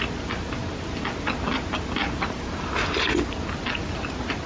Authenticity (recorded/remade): recorded